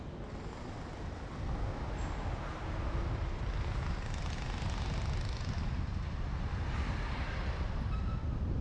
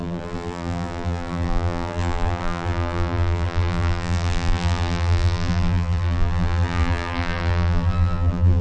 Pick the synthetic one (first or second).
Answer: second